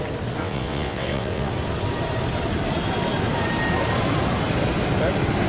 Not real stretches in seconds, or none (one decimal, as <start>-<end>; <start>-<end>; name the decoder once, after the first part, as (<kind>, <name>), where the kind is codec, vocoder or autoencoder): 0.4-1.5 (vocoder, WaveNeXt)